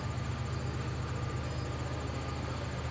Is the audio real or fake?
real